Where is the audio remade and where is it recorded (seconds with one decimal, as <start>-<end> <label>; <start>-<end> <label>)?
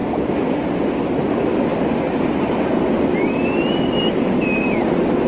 0.0-5.3 recorded